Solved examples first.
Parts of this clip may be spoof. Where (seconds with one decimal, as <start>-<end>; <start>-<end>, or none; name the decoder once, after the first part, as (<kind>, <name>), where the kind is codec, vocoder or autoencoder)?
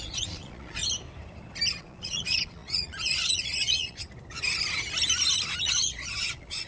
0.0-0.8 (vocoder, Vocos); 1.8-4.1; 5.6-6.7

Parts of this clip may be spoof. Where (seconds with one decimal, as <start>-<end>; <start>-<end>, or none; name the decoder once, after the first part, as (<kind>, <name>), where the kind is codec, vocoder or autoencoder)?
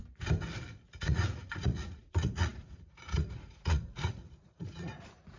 0.9-5.4 (vocoder, Vocos)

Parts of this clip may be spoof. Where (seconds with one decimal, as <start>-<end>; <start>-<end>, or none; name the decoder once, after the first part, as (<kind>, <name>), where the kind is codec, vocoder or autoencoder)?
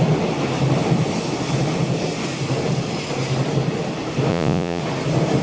4.3-4.8 (vocoder, Vocos)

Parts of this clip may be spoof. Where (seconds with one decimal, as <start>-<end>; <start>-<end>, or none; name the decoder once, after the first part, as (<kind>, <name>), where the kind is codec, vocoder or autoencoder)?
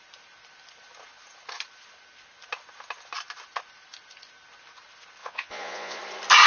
5.2-6.0 (vocoder, Vocos)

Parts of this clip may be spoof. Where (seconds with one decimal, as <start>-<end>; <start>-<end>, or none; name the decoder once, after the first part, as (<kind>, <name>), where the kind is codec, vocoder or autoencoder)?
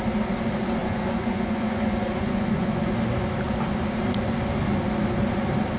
0.8-2.9 (vocoder, Vocos)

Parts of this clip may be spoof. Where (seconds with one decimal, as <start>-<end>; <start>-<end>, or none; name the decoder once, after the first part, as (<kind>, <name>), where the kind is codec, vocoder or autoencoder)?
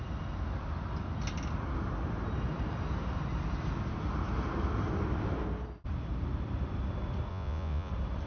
7.3-7.9 (vocoder, Vocos)